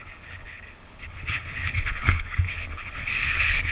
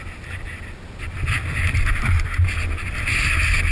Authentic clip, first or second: second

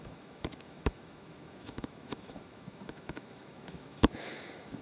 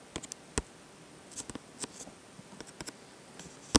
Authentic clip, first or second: second